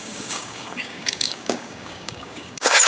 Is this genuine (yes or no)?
no